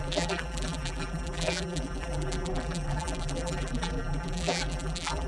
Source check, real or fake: fake